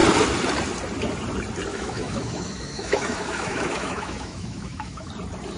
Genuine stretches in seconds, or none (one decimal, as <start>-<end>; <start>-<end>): 0.0-1.7; 5.1-5.6